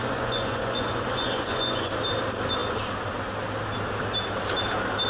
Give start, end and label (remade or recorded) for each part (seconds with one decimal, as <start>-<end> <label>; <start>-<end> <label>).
0.0-1.9 remade; 1.9-5.1 recorded

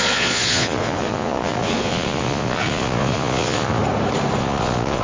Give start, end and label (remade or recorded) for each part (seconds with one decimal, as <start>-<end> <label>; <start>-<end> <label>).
0.0-3.8 remade; 3.8-4.4 recorded; 4.4-5.0 remade

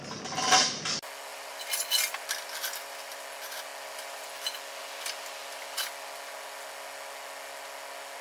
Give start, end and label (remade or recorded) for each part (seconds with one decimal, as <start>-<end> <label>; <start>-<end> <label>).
0.0-1.3 recorded; 1.3-3.2 remade; 3.2-8.2 recorded

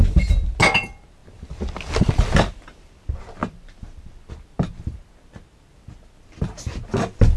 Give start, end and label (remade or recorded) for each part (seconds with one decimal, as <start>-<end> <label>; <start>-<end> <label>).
0.0-1.2 recorded; 1.2-2.9 remade; 2.9-3.4 recorded; 3.4-5.0 remade; 5.0-7.4 recorded